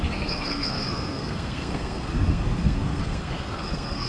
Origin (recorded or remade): remade